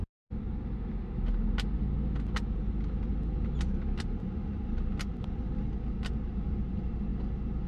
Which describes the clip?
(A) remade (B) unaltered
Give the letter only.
B